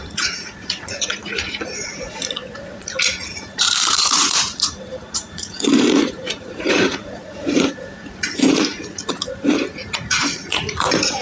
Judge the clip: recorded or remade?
remade